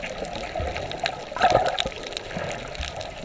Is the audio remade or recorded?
recorded